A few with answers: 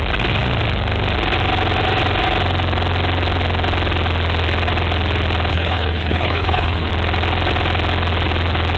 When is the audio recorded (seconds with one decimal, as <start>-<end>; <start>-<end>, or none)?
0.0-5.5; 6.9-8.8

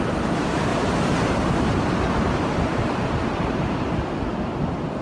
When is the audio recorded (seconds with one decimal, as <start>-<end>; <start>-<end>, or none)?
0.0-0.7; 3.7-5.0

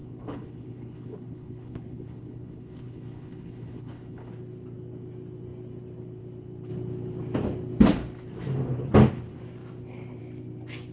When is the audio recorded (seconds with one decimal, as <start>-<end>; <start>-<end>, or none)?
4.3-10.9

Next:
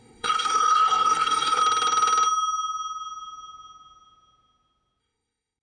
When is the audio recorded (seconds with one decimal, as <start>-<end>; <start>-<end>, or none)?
1.6-5.0

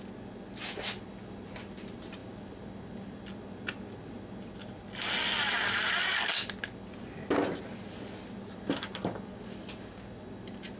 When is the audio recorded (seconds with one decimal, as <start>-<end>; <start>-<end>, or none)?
0.0-10.8

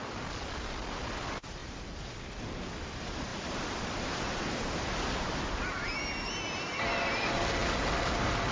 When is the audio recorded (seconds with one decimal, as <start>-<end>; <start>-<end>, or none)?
0.0-1.6; 2.5-3.3; 4.4-8.5

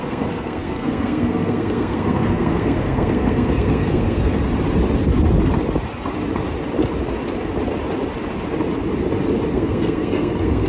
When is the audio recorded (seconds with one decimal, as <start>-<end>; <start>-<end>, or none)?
4.3-9.5

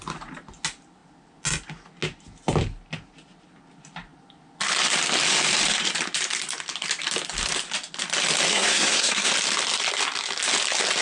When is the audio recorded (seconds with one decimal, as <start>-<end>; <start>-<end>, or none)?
0.0-8.5; 9.3-11.0